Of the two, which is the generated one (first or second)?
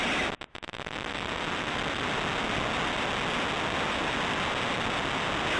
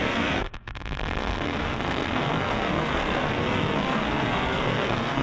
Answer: second